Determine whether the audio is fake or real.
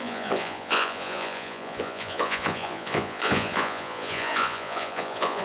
fake